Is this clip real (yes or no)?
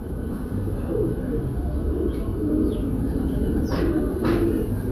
yes